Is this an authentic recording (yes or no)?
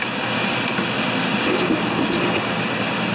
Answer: yes